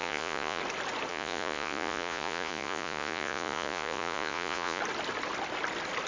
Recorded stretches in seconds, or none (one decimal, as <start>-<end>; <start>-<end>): 0.6-1.1; 4.8-6.1